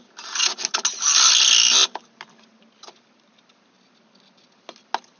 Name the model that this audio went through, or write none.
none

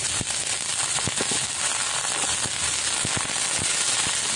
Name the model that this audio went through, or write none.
none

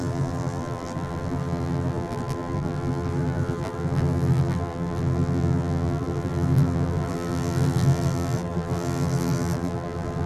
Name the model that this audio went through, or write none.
vocoder, BigVGAN v2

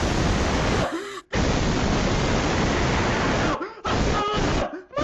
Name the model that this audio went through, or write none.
none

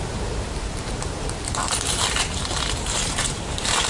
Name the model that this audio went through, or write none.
vocoder, BigVGAN v2